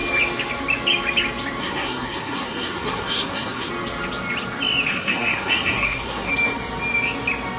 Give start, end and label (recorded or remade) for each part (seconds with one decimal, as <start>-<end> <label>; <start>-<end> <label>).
0.0-1.6 recorded; 1.6-3.7 remade; 3.7-4.9 recorded; 4.9-6.3 remade; 6.3-7.6 recorded